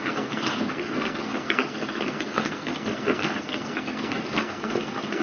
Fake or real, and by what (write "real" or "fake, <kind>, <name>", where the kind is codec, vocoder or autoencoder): fake, codec, SNAC